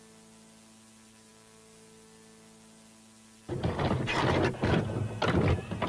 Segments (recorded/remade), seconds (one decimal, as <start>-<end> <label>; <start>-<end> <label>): 0.0-5.9 recorded